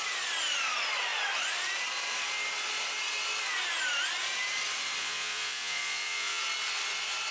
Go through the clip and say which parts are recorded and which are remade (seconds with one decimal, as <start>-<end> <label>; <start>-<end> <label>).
0.0-5.0 recorded; 5.0-6.4 remade; 6.4-7.3 recorded